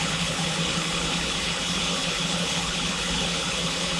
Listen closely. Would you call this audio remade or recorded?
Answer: remade